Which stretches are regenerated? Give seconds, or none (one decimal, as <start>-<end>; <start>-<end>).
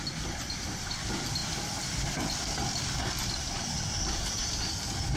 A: none